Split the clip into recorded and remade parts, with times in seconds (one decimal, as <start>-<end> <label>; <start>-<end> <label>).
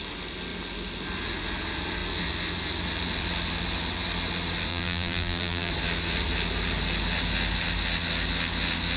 0.0-4.7 recorded; 4.7-5.7 remade; 5.7-9.0 recorded